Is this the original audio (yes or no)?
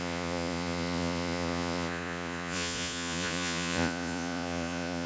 no